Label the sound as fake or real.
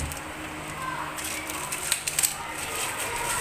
real